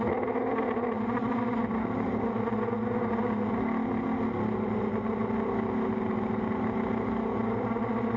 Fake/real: real